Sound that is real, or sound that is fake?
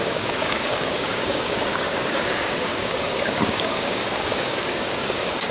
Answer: fake